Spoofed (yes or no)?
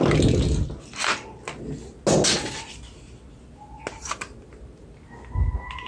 no